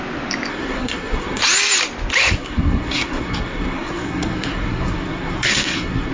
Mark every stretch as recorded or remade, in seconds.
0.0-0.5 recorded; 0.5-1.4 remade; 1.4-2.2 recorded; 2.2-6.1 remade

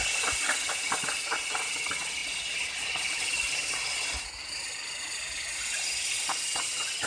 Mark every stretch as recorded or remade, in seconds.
0.0-7.1 recorded